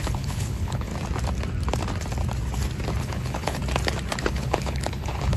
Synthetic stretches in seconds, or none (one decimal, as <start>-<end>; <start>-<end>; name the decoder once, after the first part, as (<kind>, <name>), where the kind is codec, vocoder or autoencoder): 0.0-0.9 (codec, HILCodec); 3.0-3.6; 4.2-5.4